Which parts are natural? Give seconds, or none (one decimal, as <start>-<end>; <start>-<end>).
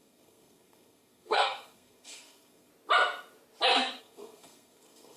2.7-4.0